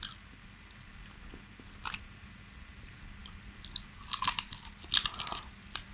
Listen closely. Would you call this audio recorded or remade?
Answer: recorded